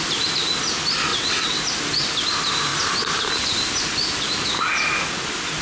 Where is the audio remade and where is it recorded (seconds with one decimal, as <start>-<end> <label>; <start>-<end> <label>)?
0.0-1.1 recorded; 1.1-1.6 remade; 1.6-5.6 recorded